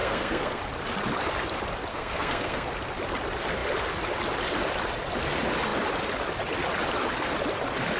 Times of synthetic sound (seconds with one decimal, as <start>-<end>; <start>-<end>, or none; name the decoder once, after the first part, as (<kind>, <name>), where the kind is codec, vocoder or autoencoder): 0.0-0.6 (codec, SNAC); 1.9-2.7